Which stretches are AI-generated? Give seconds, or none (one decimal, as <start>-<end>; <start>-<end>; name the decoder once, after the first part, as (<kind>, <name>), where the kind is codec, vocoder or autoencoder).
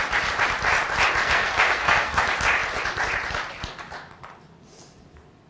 1.2-2.2 (codec, SNAC)